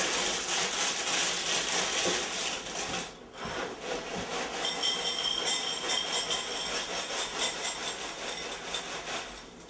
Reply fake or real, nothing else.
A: real